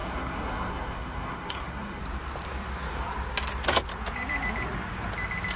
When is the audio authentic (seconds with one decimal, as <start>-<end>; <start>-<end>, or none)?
2.0-5.6